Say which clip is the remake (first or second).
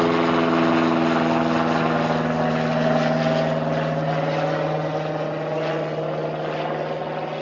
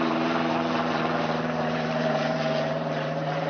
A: second